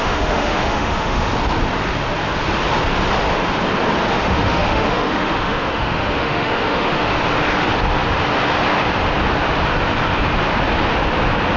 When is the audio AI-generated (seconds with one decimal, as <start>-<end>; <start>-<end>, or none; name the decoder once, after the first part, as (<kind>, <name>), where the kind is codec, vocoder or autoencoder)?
0.0-1.3 (autoencoder, DAC-VAE); 4.1-7.1